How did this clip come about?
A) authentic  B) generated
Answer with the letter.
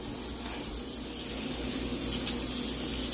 A